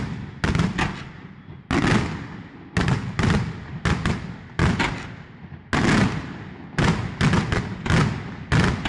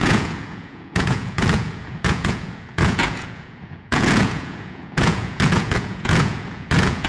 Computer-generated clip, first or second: second